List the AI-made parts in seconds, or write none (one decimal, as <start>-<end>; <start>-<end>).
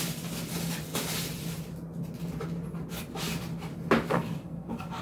4.1-5.0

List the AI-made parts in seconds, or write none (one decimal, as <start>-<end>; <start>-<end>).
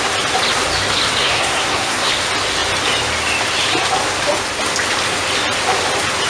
1.2-2.1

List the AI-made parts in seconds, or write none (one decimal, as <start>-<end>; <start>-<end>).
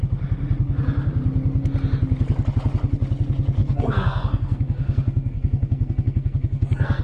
3.6-7.0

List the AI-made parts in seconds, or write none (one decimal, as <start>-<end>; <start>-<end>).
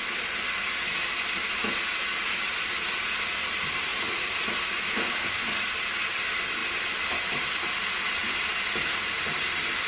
none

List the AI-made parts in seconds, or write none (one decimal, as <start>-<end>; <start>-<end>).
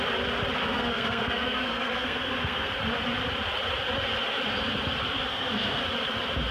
0.6-2.7; 5.3-5.8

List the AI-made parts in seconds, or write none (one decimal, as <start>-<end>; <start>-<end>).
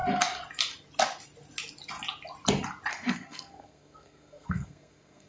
2.9-5.3